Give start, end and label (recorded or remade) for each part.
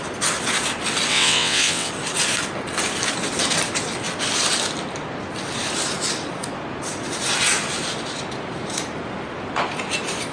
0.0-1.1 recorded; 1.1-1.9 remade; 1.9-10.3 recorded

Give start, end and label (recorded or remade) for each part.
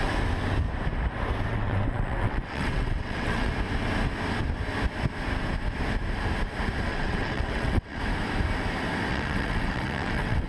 0.0-1.5 recorded; 1.5-3.5 remade; 3.5-6.9 recorded; 6.9-8.0 remade; 8.0-9.1 recorded; 9.1-10.5 remade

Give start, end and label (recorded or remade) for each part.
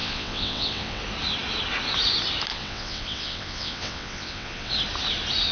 0.0-1.0 remade; 1.0-2.5 recorded; 2.5-4.7 remade; 4.7-5.5 recorded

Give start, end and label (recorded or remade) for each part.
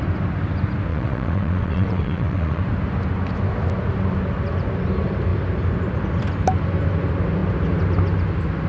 0.0-0.9 recorded; 0.9-2.6 remade; 2.6-8.7 recorded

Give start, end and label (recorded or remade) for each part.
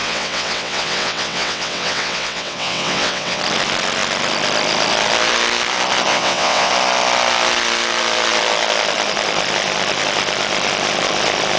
0.0-3.4 remade; 3.4-6.1 recorded; 6.1-6.7 remade; 6.7-11.6 recorded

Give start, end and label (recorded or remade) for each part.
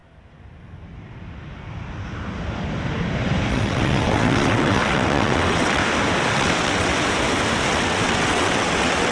0.0-3.5 recorded; 3.5-5.8 remade; 5.8-6.3 recorded; 6.3-6.9 remade; 6.9-7.7 recorded; 7.7-9.1 remade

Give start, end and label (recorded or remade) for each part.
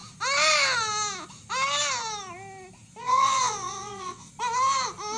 0.0-3.0 recorded; 3.0-4.3 remade; 4.3-5.2 recorded